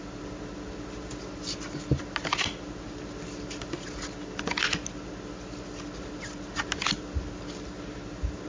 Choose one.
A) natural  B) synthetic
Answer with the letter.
A